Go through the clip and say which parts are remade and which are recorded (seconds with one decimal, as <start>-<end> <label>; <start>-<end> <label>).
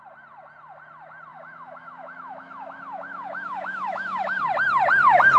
0.0-1.3 recorded; 1.3-4.4 remade; 4.4-5.4 recorded